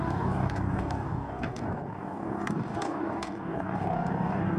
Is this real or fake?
fake